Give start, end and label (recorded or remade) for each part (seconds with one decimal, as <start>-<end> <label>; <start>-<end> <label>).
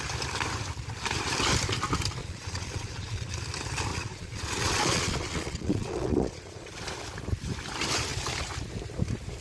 0.0-2.2 recorded; 2.2-3.3 remade; 3.3-3.9 recorded; 3.9-6.7 remade; 6.7-9.4 recorded